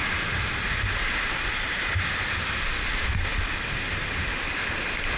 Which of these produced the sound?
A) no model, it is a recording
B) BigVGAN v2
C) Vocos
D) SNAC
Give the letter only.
A